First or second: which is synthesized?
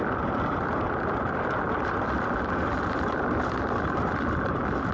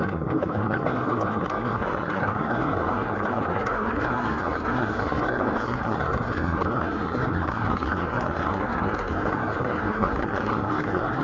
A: second